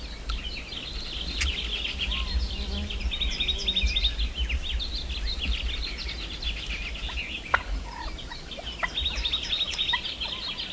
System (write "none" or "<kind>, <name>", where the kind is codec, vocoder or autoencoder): none